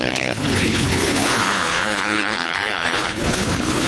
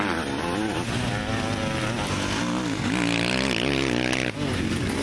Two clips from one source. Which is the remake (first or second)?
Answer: first